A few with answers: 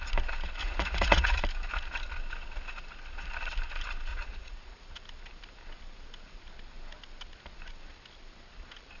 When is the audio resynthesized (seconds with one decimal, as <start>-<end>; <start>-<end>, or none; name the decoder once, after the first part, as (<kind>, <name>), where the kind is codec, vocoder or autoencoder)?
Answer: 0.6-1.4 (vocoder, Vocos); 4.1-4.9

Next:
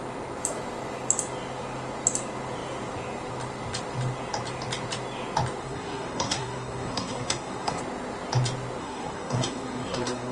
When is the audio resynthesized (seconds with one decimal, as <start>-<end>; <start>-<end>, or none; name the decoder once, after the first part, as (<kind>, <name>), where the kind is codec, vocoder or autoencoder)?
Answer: 5.6-7.8 (codec, SNAC); 8.8-10.3

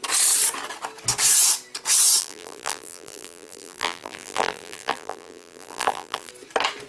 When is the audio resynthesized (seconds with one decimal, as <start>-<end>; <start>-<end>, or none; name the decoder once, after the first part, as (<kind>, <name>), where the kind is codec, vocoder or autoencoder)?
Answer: 2.2-6.3 (vocoder, BigVGAN v2)